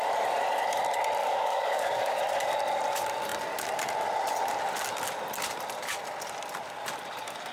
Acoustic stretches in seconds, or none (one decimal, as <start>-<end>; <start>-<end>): 0.0-1.2; 2.2-7.5